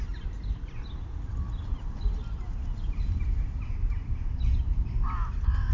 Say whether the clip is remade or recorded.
recorded